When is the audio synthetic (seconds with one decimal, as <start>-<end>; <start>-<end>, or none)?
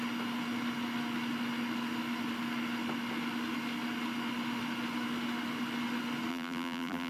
6.3-7.1